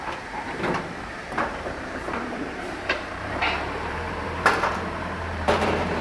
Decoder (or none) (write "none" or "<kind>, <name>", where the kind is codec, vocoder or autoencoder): vocoder, BigVGAN v2